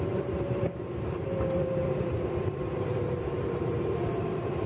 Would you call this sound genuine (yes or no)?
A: no